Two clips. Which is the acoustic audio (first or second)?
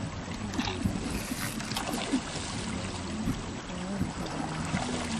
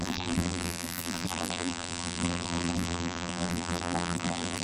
first